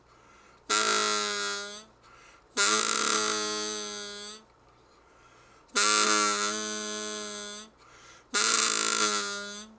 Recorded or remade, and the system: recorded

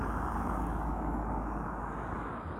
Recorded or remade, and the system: remade, codec, DAC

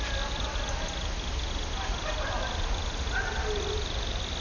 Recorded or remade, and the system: recorded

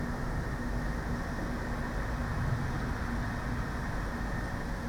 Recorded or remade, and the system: recorded